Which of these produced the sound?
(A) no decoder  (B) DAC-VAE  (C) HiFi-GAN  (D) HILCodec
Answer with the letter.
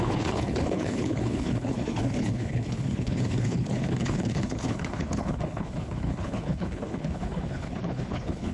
D